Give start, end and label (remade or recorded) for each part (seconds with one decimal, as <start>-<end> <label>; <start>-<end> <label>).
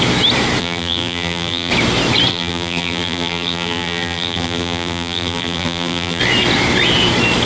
0.0-0.6 recorded; 0.6-1.7 remade; 1.7-2.3 recorded; 2.3-6.2 remade; 6.2-7.5 recorded